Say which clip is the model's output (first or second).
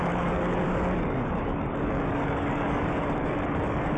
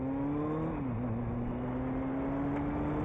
first